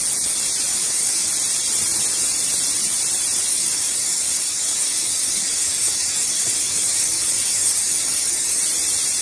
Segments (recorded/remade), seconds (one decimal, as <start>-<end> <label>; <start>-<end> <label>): 0.0-0.7 recorded; 0.7-1.3 remade; 1.3-3.5 recorded; 3.5-8.6 remade; 8.6-9.2 recorded

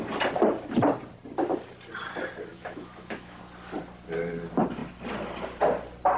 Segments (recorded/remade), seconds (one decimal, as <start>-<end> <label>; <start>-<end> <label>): 0.0-2.5 recorded; 2.5-3.4 remade; 3.4-6.2 recorded

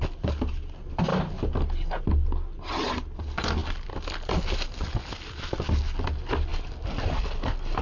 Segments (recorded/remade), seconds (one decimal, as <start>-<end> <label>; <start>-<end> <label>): 0.0-7.8 recorded

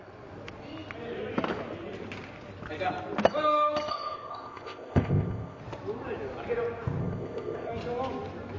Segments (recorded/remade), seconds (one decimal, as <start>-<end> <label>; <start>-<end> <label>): 0.0-3.9 recorded; 3.9-5.6 remade; 5.6-7.0 recorded; 7.0-7.7 remade; 7.7-8.6 recorded